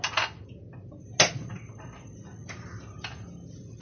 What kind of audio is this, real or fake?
real